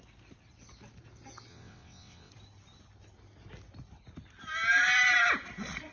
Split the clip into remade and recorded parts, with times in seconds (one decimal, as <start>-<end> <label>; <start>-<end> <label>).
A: 0.0-1.5 recorded; 1.5-2.3 remade; 2.3-5.9 recorded